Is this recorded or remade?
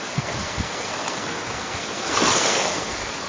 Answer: remade